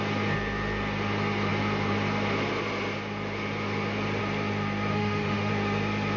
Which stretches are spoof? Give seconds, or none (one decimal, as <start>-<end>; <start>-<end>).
4.9-5.5

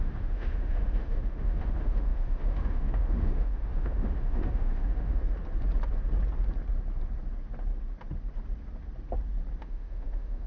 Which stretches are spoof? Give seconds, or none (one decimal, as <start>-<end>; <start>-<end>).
0.0-5.2; 9.6-10.5